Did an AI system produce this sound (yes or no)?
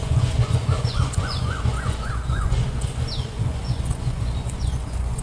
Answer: yes